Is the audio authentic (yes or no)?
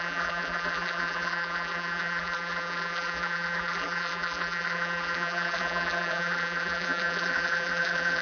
no